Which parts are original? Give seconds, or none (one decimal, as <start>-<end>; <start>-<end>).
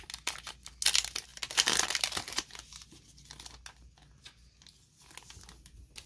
0.0-6.1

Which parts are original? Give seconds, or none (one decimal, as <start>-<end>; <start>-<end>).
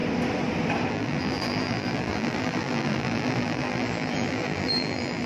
0.0-0.9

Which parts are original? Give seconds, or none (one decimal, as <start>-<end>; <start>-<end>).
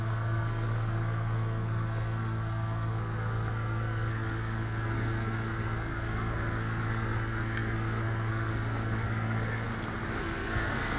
9.7-10.2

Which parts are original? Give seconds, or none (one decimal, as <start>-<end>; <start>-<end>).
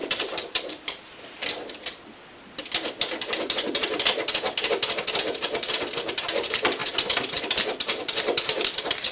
1.1-9.1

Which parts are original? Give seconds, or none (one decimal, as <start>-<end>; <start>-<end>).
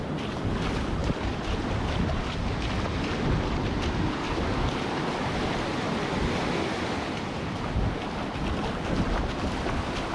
0.0-1.0; 2.1-10.1